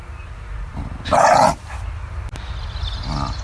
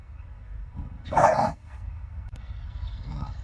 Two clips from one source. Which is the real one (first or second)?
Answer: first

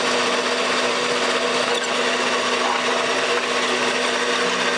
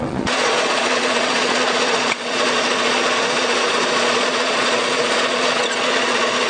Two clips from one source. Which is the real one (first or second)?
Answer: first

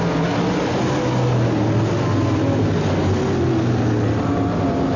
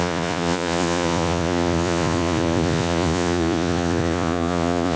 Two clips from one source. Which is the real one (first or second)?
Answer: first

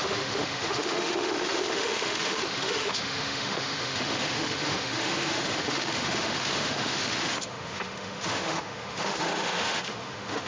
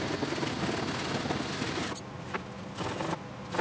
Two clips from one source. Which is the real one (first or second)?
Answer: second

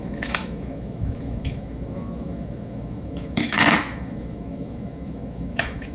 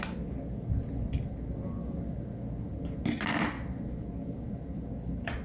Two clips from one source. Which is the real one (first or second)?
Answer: second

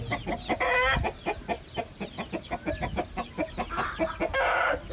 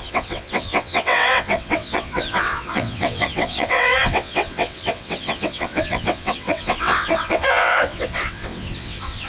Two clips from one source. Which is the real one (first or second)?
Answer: first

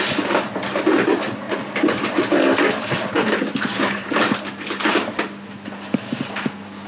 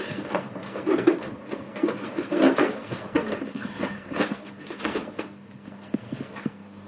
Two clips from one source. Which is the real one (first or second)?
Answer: first